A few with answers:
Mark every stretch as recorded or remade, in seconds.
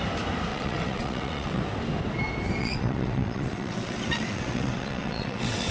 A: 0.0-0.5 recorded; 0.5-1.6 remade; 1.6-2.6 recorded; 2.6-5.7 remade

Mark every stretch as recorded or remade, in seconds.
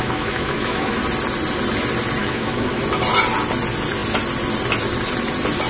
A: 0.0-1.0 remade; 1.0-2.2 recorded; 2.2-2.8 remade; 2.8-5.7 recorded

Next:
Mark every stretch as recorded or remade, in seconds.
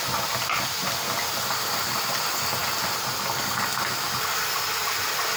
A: 0.0-5.4 recorded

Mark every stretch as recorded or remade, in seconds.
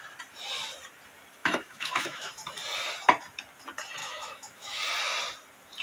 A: 0.0-1.4 recorded; 1.4-2.3 remade; 2.3-4.0 recorded; 4.0-4.8 remade; 4.8-5.8 recorded